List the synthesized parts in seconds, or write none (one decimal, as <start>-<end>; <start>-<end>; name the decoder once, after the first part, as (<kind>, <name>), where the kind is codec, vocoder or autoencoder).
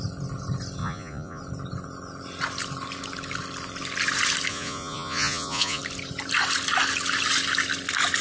0.8-1.4 (vocoder, Vocos); 4.5-5.8